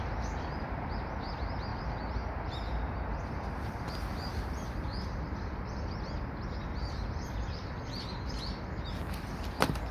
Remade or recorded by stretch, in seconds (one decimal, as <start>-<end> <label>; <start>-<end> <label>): 0.0-9.9 recorded